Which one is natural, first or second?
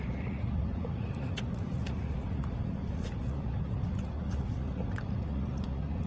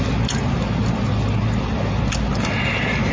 second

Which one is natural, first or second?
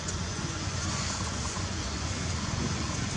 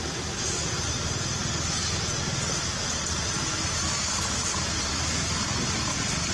second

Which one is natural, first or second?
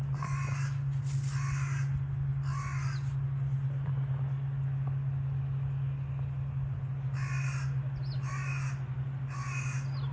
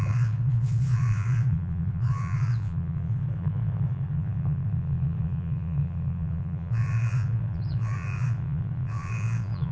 first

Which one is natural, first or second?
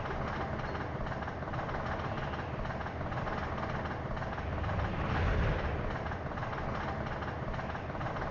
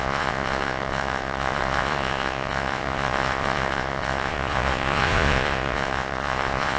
first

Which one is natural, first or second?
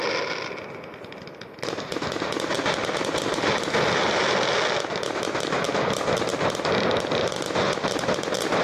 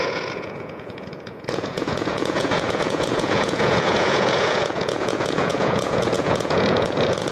first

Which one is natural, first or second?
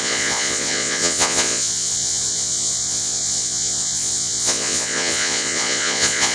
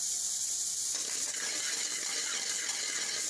second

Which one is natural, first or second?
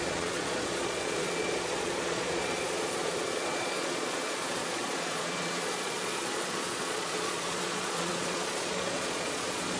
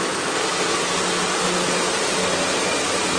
second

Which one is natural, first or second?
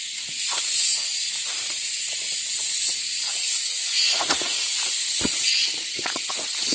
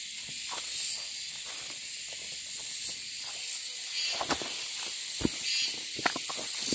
second